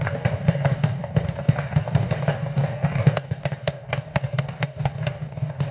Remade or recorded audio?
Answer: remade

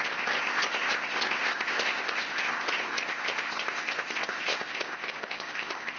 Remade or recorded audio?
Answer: remade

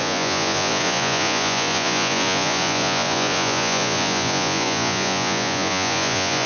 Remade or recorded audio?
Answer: remade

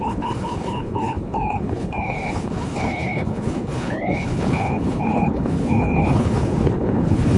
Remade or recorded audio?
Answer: remade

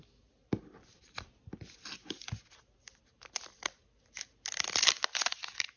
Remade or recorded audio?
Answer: recorded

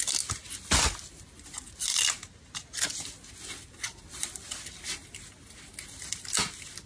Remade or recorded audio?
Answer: recorded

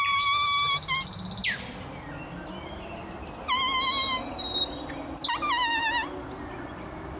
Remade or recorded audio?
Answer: recorded